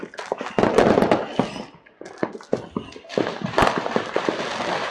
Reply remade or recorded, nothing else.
recorded